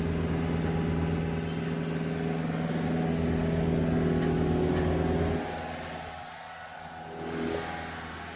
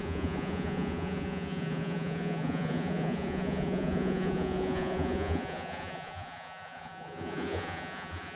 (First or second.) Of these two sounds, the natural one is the first